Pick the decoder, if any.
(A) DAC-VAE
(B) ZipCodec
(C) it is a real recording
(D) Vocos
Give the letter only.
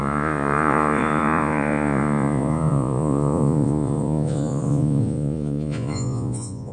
D